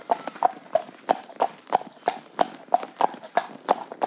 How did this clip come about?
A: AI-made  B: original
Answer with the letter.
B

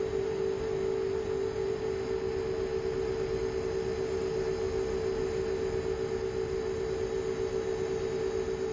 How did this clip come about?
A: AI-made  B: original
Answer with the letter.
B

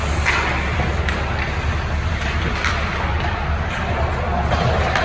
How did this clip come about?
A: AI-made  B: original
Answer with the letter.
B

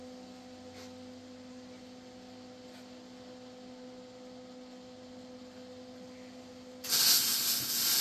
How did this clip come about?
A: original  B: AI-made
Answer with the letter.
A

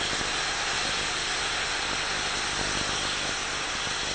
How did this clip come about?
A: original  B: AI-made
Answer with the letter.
A